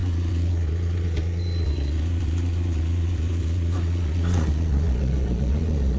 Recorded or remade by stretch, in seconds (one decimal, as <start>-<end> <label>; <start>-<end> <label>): 0.0-6.0 remade